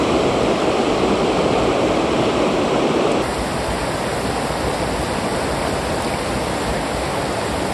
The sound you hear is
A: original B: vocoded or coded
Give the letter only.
A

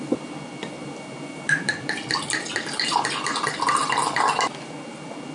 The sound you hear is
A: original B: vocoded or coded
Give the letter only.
B